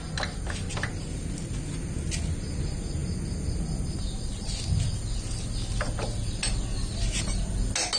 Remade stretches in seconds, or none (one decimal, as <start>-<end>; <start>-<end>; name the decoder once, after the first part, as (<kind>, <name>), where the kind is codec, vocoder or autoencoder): none